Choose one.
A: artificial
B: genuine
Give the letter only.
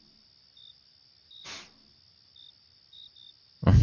B